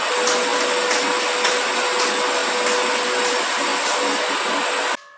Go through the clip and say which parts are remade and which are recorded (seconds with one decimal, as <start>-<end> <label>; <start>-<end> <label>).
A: 0.0-3.7 recorded; 3.7-4.3 remade; 4.3-5.2 recorded

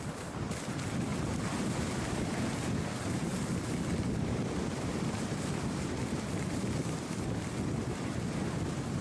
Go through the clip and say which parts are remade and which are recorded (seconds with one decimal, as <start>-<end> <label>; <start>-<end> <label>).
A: 0.0-1.1 recorded; 1.1-2.3 remade; 2.3-4.6 recorded; 4.6-5.9 remade; 5.9-9.0 recorded

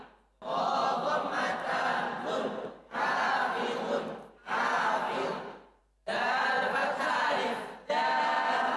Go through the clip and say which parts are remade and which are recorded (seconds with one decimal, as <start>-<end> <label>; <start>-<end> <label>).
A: 0.0-5.3 recorded; 5.3-5.8 remade; 5.8-6.8 recorded; 6.8-8.8 remade

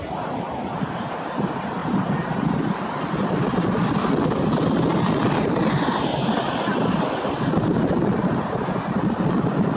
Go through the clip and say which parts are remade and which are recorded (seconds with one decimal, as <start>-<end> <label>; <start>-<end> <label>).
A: 0.0-4.9 remade; 4.9-5.5 recorded; 5.5-9.8 remade

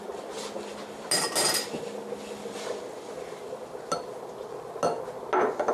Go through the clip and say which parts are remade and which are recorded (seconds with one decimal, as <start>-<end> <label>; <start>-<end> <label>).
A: 0.0-5.7 recorded

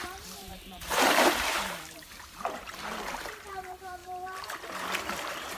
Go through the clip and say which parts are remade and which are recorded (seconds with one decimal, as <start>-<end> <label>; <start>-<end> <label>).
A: 0.0-5.6 remade

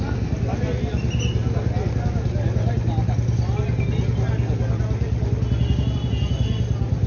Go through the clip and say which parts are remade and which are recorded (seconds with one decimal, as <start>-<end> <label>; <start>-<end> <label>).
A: 0.0-7.1 recorded

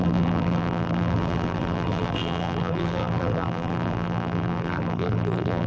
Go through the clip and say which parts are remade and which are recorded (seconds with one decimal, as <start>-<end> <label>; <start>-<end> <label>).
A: 0.0-5.7 remade